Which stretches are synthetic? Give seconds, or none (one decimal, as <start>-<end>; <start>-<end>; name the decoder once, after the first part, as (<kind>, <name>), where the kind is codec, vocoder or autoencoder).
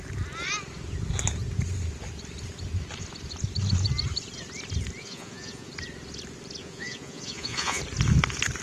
5.0-5.7 (vocoder, Vocos); 6.6-7.8